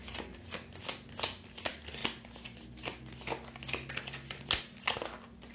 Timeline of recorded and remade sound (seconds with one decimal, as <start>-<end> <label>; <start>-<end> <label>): 0.0-5.5 recorded